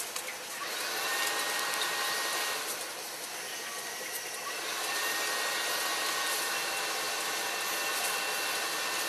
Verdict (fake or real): real